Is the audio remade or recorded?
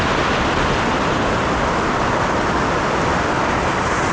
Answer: recorded